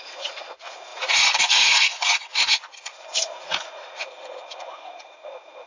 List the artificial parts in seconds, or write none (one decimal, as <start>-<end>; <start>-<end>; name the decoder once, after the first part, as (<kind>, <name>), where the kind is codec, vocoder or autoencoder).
0.0-1.9 (vocoder, Vocos); 2.8-5.7